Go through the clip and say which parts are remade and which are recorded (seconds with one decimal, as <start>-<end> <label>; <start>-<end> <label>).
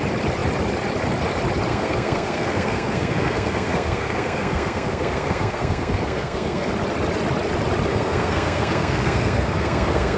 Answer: 0.0-1.7 recorded; 1.7-6.7 remade; 6.7-7.9 recorded; 7.9-10.2 remade